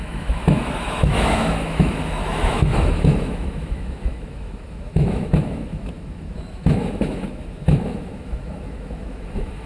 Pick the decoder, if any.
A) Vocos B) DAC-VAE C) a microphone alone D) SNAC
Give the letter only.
B